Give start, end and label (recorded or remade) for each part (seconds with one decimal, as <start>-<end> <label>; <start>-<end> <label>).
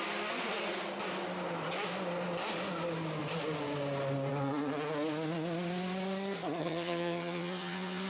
0.0-6.6 recorded; 6.6-8.1 remade